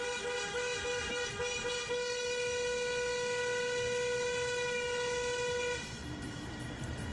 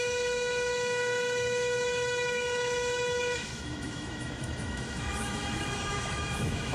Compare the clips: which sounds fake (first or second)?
second